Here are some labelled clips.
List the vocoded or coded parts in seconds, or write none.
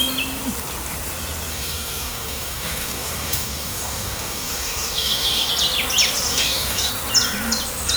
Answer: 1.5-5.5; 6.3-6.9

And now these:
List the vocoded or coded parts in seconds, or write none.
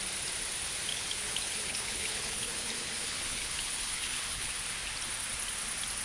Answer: 0.9-4.5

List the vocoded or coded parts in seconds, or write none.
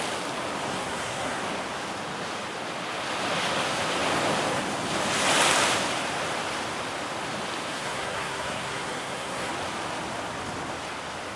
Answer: 0.7-1.4; 7.7-9.5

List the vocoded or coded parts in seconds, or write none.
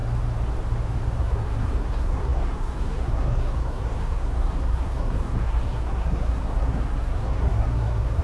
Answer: 1.2-8.2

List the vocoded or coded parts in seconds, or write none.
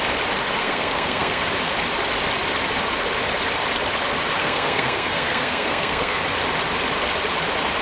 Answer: 0.6-1.4; 4.4-6.2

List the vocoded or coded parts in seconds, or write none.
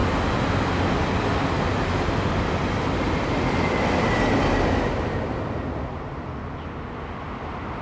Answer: none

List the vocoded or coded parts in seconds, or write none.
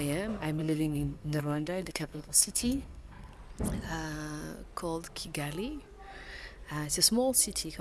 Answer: 0.6-3.3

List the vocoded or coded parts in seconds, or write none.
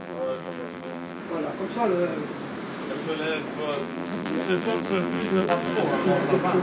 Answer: 0.0-1.2; 3.8-5.8